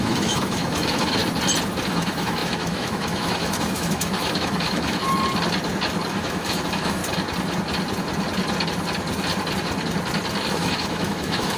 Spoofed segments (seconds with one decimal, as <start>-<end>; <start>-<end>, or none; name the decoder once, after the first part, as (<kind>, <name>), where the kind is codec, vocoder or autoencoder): 0.0-1.2 (autoencoder, DAC-VAE); 1.9-5.0; 6.1-7.0; 10.5-11.6